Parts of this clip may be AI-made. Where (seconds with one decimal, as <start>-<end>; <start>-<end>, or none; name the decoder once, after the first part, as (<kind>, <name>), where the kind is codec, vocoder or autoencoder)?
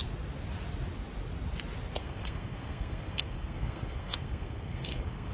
2.0-5.3 (codec, SNAC)